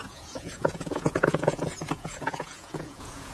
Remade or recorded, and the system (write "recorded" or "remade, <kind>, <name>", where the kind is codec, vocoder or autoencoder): remade, vocoder, Vocos